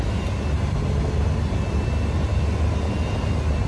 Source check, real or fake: real